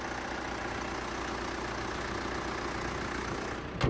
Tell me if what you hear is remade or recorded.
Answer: recorded